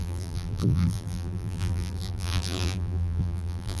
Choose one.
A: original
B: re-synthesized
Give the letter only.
B